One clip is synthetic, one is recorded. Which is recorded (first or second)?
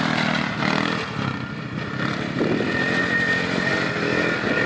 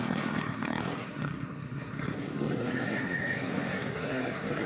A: first